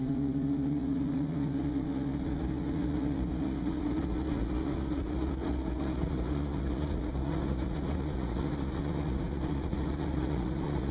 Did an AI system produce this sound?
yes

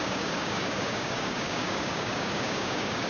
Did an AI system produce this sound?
yes